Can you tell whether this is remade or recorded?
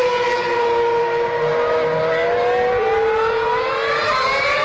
recorded